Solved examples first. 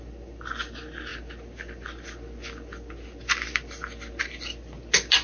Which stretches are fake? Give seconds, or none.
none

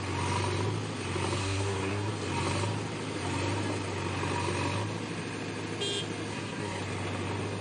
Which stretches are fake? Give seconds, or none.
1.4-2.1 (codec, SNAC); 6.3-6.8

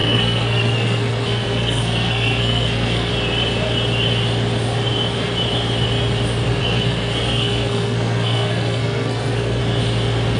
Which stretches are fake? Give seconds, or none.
0.0-3.1 (codec, SNAC); 6.6-9.6

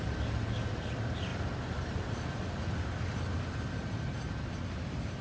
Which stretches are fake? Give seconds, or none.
none